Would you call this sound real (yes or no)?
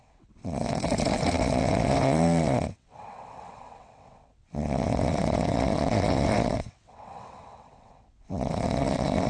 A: no